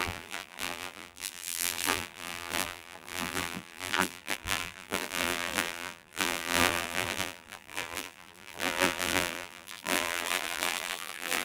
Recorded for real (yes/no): no